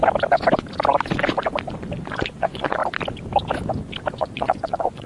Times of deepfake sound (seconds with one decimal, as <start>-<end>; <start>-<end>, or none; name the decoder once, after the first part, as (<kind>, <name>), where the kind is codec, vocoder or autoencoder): 2.1-2.8 (vocoder, Vocos); 4.1-5.1

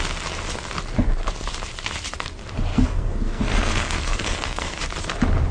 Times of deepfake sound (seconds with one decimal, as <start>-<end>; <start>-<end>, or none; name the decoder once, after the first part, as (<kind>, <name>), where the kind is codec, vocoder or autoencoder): 2.7-4.8 (codec, SNAC)

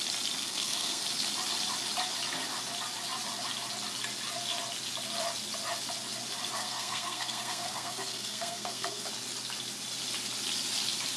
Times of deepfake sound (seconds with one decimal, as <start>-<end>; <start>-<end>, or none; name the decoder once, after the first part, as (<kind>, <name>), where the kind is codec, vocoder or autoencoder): 0.4-1.0 (codec, SNAC); 6.6-9.1

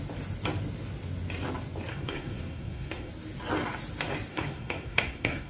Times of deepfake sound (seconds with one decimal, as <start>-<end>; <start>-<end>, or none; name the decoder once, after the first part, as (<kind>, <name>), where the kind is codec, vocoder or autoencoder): 1.9-3.1 (codec, SNAC); 4.3-5.5

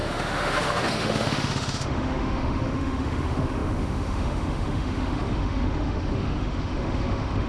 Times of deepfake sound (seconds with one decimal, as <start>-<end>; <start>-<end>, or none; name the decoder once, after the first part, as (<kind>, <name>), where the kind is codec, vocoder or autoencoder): 0.0-7.5 (autoencoder, DAC-VAE)